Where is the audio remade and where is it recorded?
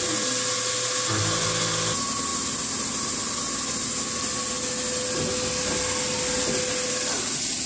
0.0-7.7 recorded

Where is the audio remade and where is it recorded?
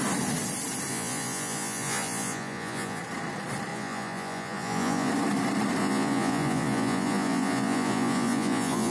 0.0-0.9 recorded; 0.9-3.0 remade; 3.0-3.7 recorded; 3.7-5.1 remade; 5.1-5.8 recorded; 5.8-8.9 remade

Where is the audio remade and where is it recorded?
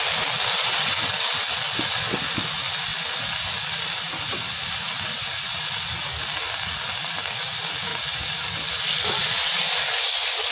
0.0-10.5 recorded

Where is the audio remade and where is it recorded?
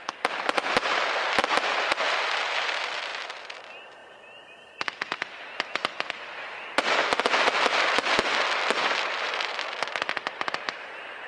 0.0-11.3 recorded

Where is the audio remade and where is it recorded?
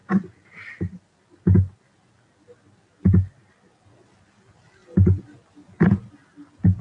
0.0-6.8 recorded